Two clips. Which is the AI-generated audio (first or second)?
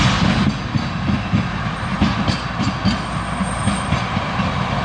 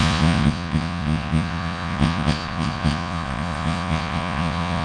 second